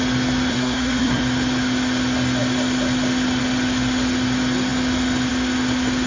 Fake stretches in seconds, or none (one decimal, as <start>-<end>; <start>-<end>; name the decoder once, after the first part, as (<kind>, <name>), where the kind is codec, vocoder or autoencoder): 0.5-1.2 (codec, SNAC)